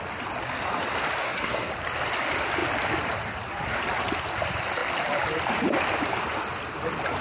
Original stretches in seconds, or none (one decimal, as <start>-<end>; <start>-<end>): 0.0-1.2; 1.7-7.2